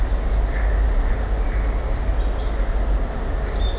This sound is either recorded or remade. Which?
recorded